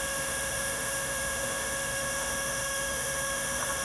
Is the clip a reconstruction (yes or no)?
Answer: yes